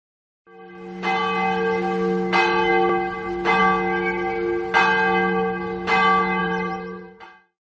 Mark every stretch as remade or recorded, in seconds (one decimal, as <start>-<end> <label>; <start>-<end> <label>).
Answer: 0.0-6.4 recorded; 6.4-7.6 remade